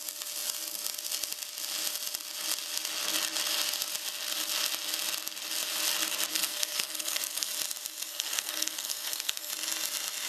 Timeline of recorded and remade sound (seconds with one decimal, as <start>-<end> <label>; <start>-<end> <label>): 0.0-6.3 recorded; 6.3-7.5 remade; 7.5-8.1 recorded; 8.1-9.5 remade; 9.5-10.3 recorded